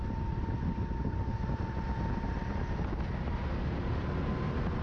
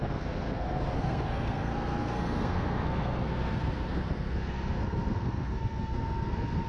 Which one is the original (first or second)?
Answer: first